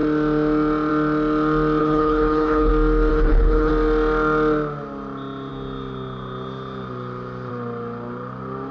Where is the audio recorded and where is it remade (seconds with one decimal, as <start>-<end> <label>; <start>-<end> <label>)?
0.0-1.8 recorded; 1.8-2.7 remade; 2.7-3.1 recorded; 3.1-3.7 remade; 3.7-8.7 recorded